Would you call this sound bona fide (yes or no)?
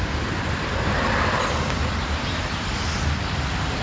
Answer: yes